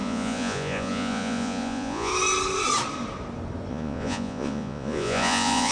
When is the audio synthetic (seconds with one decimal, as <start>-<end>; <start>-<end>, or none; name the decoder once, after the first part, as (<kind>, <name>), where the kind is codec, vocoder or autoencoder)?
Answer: 0.0-2.1 (vocoder, Vocos); 3.7-5.7